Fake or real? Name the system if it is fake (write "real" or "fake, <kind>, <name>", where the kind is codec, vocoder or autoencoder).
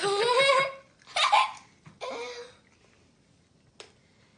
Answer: real